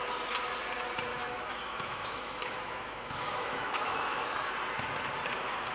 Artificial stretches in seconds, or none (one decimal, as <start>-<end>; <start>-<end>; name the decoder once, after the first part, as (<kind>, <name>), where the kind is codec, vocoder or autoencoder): 1.1-4.5 (autoencoder, DAC-VAE)